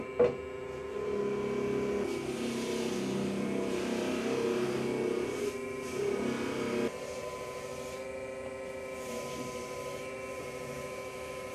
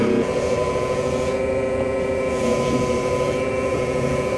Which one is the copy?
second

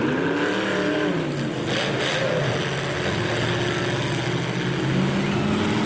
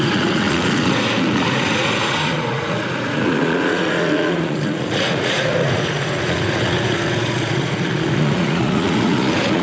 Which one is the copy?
second